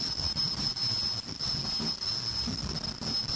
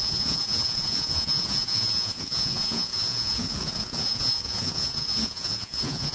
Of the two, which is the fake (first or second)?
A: second